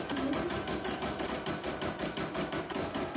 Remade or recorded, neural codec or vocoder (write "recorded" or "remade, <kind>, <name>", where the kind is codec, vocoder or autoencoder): recorded